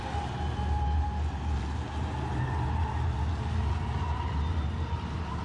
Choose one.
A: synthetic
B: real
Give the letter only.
B